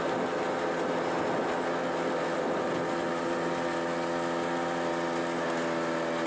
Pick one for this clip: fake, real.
real